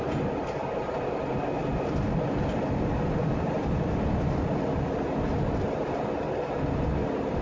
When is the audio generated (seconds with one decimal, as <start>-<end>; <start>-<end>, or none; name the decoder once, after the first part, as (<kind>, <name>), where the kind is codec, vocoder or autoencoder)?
none